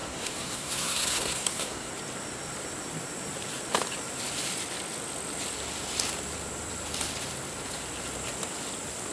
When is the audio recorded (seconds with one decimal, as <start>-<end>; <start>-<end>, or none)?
1.9-9.1